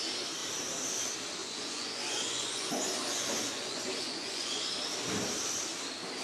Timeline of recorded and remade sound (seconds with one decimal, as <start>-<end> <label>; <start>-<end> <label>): 0.0-1.4 recorded; 1.4-4.7 remade; 4.7-6.2 recorded